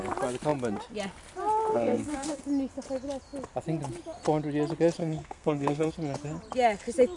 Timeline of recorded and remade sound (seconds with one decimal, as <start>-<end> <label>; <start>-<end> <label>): 0.0-1.7 recorded; 1.7-2.4 remade; 2.4-5.0 recorded; 5.0-5.9 remade; 5.9-7.2 recorded